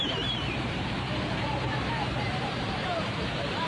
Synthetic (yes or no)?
yes